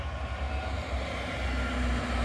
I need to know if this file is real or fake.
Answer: real